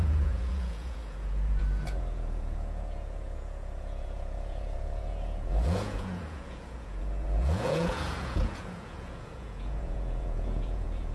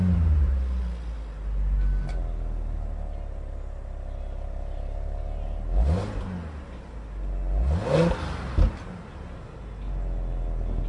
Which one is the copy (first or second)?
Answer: first